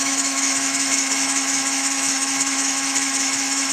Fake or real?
fake